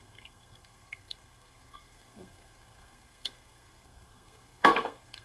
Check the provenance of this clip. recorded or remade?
remade